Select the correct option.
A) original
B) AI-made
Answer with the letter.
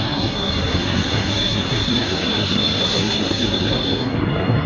B